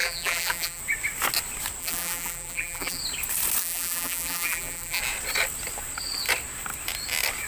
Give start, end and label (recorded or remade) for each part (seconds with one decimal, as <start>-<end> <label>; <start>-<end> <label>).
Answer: 0.0-0.8 remade; 0.8-1.8 recorded; 1.8-3.0 remade; 3.0-3.6 recorded; 3.6-5.0 remade; 5.0-7.5 recorded